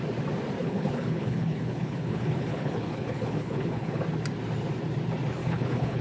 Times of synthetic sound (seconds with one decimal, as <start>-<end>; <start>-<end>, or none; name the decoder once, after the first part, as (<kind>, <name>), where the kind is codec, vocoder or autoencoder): 0.6-4.0 (codec, HILCodec); 5.4-6.0